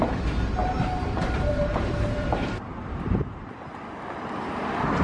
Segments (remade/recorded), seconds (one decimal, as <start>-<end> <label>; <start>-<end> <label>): 0.0-0.6 recorded; 0.6-3.6 remade; 3.6-5.0 recorded